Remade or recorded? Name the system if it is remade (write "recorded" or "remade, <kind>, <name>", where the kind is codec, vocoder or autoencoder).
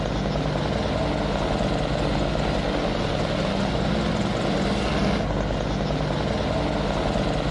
recorded